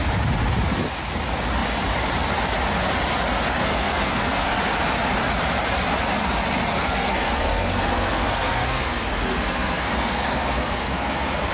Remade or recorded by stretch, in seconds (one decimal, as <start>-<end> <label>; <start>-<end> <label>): 0.0-3.6 recorded; 3.6-4.4 remade; 4.4-6.7 recorded; 6.7-11.5 remade